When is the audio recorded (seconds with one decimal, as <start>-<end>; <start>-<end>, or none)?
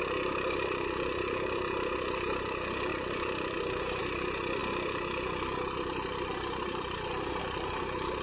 none